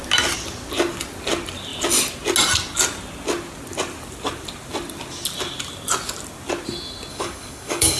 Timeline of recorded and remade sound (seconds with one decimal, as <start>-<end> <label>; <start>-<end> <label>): 0.0-7.1 recorded; 7.1-8.0 remade